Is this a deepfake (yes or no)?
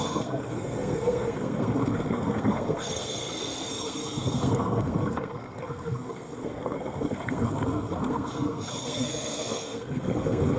yes